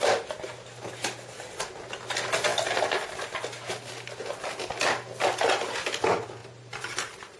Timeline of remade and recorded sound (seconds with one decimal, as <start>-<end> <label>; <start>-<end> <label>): 0.0-6.4 recorded; 6.4-7.4 remade